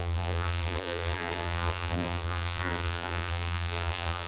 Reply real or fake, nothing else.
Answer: fake